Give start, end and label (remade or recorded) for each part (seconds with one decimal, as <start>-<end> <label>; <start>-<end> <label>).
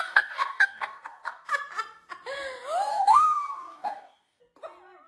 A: 0.0-1.5 remade; 1.5-2.9 recorded; 2.9-4.4 remade; 4.4-5.1 recorded